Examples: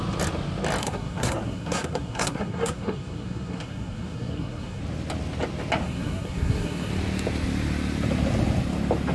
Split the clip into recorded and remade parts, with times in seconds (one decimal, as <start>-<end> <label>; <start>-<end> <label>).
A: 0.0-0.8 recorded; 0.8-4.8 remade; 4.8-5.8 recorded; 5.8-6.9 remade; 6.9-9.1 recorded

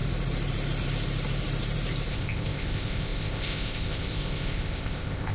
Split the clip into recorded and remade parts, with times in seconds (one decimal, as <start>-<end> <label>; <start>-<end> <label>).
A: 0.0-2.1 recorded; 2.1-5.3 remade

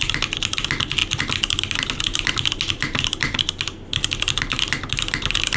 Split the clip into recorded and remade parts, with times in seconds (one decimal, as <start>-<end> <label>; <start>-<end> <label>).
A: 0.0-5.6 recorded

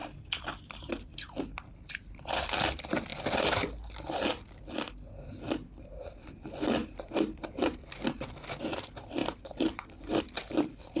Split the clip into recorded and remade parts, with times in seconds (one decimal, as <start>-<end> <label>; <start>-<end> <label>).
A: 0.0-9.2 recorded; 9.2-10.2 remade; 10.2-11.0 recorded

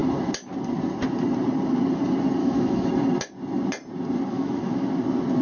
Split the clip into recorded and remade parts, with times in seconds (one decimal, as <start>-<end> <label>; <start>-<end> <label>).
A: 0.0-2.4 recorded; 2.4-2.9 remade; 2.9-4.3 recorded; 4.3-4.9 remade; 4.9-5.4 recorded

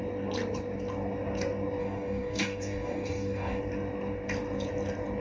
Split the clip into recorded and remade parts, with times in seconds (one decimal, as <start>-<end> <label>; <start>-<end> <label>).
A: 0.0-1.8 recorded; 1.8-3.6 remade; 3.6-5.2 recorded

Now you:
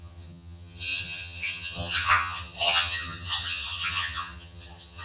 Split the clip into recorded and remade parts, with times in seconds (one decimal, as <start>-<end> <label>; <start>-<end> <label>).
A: 0.0-5.0 remade